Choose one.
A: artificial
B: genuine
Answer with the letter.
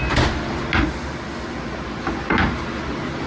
B